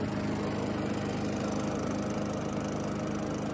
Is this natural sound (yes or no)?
yes